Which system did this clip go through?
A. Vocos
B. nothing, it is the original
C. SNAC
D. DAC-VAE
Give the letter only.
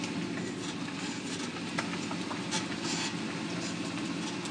B